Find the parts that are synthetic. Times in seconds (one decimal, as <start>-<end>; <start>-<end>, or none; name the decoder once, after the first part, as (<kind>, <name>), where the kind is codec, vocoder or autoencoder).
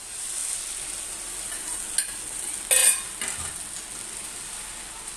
none